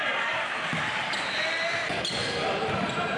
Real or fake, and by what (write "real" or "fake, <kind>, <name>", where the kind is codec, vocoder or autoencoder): real